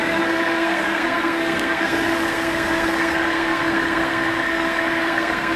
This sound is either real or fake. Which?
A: fake